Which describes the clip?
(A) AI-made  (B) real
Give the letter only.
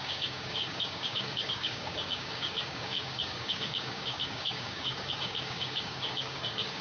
A